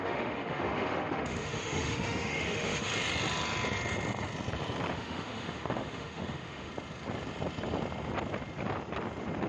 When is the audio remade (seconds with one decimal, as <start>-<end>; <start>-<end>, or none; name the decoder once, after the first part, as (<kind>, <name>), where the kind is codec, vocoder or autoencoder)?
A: 0.0-2.9 (autoencoder, DAC-VAE); 4.9-6.7